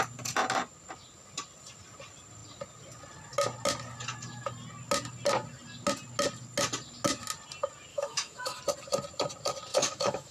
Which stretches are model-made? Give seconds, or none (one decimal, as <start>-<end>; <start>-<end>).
7.9-8.6; 9.7-10.3